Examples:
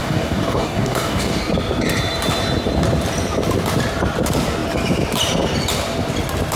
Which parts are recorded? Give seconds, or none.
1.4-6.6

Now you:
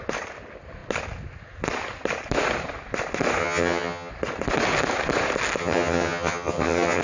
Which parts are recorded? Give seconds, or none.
0.0-3.4; 4.1-5.6

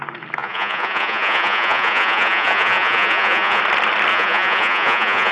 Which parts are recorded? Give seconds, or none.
0.0-0.4; 3.6-4.1

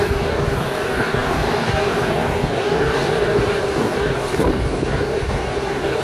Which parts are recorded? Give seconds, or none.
none